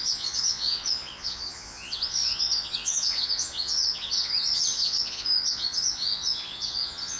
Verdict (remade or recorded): remade